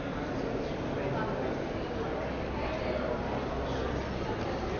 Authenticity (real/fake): real